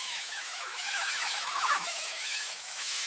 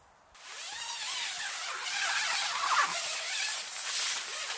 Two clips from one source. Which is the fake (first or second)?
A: first